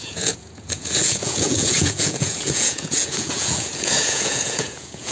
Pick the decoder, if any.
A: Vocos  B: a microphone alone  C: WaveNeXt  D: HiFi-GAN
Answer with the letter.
A